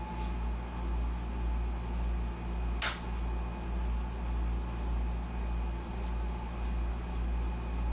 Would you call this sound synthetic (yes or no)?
no